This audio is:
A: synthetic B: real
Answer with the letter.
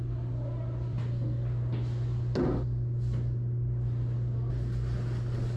B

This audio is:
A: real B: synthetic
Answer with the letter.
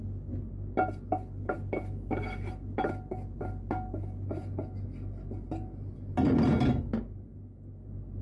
A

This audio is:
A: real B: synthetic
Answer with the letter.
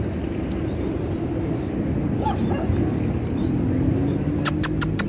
A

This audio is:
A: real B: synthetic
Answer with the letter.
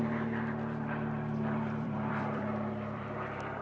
B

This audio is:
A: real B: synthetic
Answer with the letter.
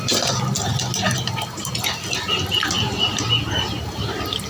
A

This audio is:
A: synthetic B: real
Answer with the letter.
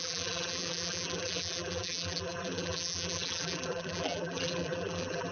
A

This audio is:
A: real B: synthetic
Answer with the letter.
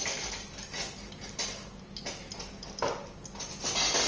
A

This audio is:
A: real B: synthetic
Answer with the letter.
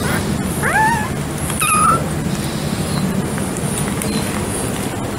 A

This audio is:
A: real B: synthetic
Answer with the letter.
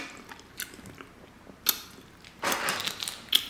A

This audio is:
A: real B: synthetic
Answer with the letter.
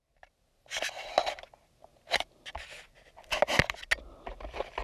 A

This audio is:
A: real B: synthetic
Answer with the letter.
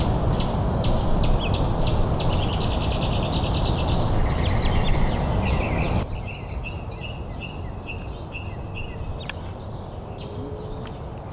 A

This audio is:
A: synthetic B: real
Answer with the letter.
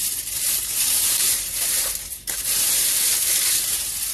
A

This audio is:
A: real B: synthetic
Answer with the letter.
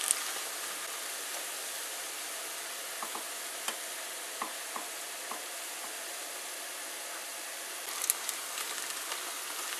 A